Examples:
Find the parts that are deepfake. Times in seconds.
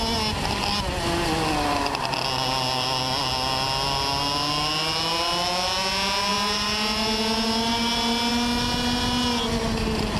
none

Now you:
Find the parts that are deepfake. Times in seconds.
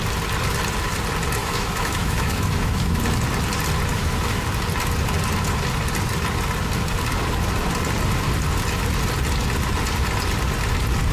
1.4-3.0 (autoencoder, DAC-VAE); 3.9-4.4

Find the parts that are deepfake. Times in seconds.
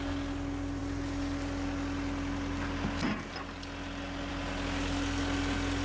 none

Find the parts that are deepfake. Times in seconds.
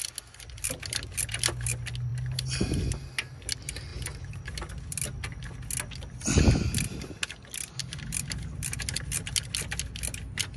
none